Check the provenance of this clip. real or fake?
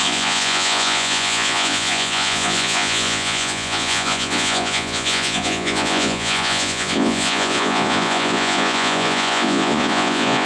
fake